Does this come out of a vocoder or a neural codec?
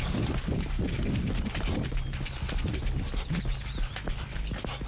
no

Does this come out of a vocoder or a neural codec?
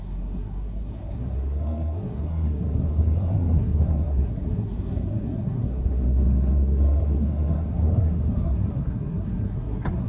yes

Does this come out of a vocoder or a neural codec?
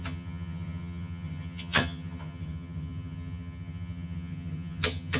yes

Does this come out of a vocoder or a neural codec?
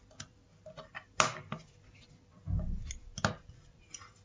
yes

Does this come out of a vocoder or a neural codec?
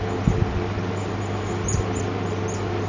no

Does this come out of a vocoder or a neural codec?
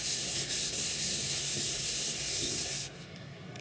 yes